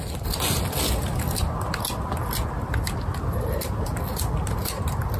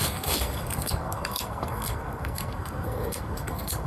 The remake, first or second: second